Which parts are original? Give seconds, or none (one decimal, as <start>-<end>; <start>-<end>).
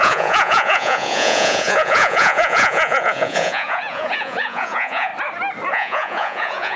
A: 5.1-5.7